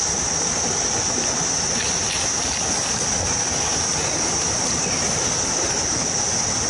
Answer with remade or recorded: recorded